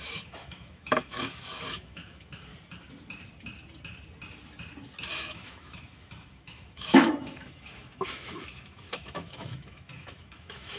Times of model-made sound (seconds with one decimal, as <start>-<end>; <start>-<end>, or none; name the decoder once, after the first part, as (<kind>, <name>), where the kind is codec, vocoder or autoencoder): 0.0-2.5 (autoencoder, DAC-VAE); 5.1-10.8